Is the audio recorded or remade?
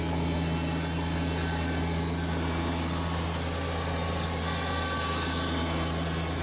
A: recorded